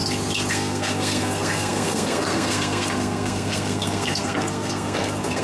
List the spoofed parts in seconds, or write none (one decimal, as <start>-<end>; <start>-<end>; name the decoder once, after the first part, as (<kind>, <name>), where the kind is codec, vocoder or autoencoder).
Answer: 0.5-5.4 (codec, SNAC)